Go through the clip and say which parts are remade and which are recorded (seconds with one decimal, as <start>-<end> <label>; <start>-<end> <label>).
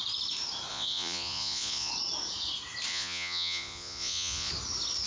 0.0-0.7 recorded; 0.7-1.9 remade; 1.9-2.9 recorded; 2.9-4.5 remade; 4.5-5.1 recorded